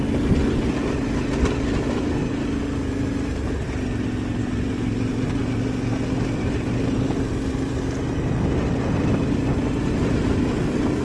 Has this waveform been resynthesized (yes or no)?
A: no